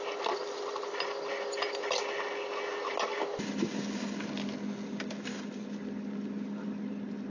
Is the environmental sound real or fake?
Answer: real